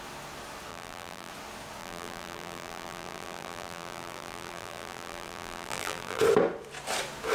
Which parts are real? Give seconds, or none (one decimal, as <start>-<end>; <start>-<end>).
0.0-0.7; 1.3-1.8; 6.2-7.3